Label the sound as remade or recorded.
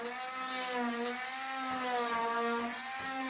recorded